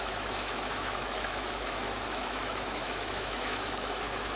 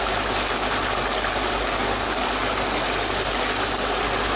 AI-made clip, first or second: first